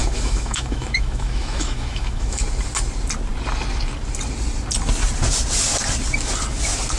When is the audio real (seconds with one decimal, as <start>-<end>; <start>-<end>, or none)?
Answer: 2.4-7.0

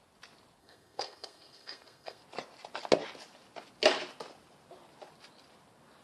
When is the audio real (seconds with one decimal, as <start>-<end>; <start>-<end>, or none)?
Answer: 0.0-0.6; 2.2-6.0

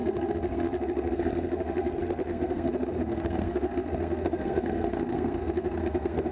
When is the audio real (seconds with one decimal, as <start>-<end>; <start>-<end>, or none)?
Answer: none

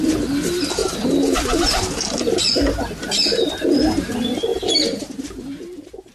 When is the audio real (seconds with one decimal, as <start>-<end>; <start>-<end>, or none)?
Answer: 0.0-4.5